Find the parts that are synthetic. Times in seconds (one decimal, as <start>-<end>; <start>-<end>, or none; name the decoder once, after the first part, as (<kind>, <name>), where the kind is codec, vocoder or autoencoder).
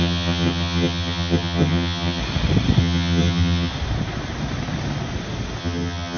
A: 0.0-2.2 (vocoder, HiFi-GAN); 2.8-3.7; 5.6-6.2